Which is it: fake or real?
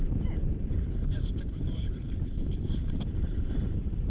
fake